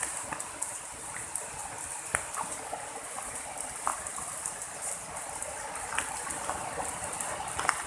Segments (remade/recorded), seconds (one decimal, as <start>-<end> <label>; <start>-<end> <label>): 0.0-7.9 recorded